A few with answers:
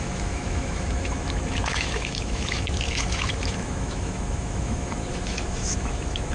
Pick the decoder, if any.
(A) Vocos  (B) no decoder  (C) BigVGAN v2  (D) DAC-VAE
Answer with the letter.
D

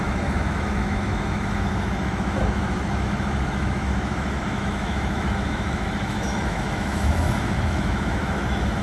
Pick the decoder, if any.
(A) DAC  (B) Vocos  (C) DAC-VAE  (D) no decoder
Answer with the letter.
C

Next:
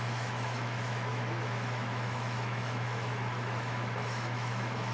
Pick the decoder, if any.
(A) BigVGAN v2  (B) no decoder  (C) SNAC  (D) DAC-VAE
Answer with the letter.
D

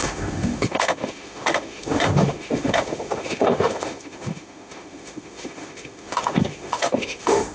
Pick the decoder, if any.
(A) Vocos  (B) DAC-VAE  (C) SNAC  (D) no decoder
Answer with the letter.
B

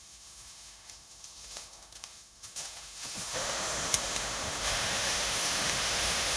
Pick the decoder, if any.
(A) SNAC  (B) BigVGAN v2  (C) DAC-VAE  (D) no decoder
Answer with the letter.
C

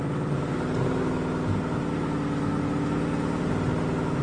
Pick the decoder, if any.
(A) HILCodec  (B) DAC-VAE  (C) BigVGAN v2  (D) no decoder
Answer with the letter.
D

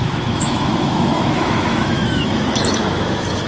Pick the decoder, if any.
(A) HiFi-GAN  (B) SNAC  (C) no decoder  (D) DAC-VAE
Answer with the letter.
D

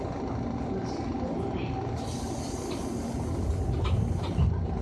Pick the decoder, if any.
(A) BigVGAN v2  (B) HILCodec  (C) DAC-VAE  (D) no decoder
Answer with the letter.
D